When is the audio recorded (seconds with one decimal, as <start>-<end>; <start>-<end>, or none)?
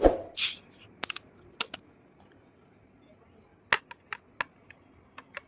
0.0-5.5